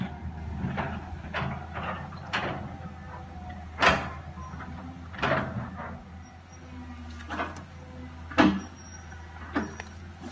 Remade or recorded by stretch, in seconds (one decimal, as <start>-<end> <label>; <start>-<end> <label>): 0.0-10.3 recorded